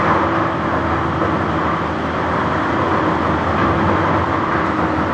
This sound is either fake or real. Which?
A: real